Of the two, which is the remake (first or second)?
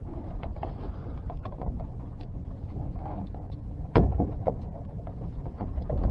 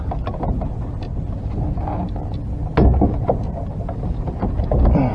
first